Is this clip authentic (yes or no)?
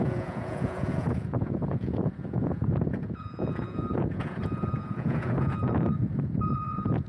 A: no